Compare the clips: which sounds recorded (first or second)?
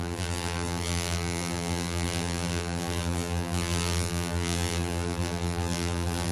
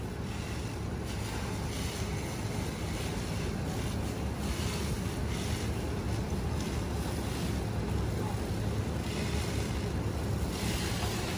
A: second